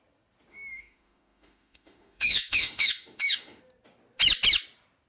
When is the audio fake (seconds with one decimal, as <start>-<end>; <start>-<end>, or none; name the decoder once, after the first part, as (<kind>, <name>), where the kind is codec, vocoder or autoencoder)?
0.5-3.6 (autoencoder, DAC-VAE)